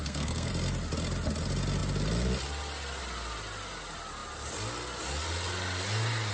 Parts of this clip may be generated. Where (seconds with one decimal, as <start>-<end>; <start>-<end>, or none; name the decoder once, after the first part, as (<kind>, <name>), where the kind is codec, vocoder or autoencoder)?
0.0-0.5 (codec, SNAC)